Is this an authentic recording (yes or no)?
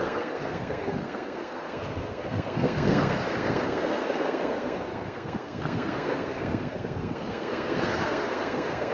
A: no